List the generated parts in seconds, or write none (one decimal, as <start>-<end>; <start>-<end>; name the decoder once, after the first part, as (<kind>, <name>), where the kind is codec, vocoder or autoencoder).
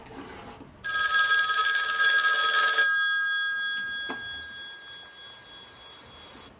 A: none